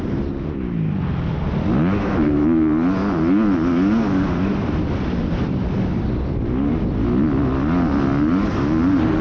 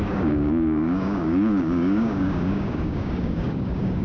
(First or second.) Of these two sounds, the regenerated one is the second